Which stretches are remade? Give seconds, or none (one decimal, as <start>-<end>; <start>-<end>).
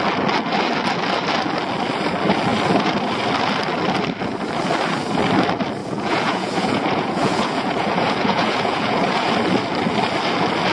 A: 5.8-9.3